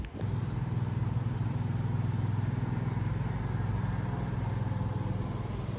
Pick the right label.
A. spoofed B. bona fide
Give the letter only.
B